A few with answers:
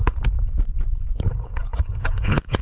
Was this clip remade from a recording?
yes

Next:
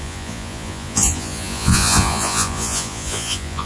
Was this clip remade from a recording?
yes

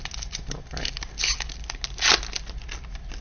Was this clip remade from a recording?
no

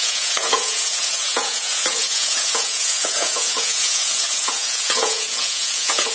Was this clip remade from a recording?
yes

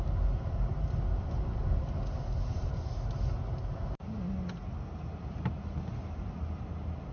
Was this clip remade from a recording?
no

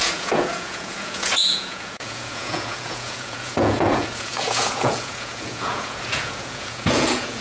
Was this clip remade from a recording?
yes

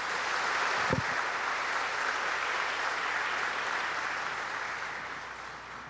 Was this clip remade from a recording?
no